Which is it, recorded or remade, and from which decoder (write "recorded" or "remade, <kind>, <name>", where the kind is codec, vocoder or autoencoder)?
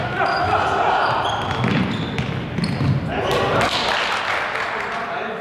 recorded